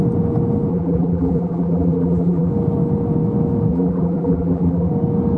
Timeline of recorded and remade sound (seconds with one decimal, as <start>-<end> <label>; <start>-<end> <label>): 0.0-0.7 recorded; 0.7-2.5 remade; 2.5-3.7 recorded; 3.7-4.9 remade; 4.9-5.4 recorded